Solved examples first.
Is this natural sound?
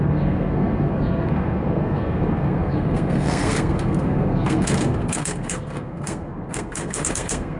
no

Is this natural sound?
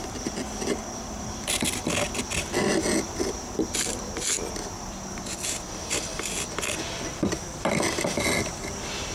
yes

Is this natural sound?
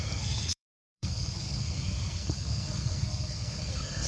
no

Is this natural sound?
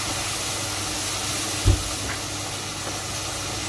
yes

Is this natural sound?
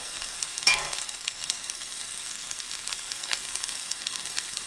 no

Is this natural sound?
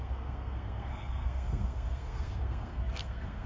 no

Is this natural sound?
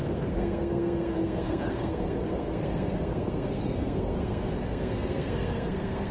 no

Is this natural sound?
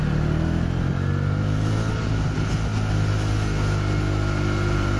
yes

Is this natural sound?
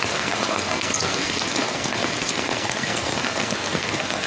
no